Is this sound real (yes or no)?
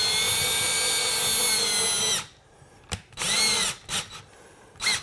yes